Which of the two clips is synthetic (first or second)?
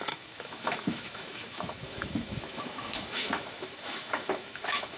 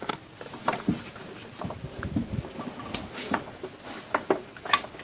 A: first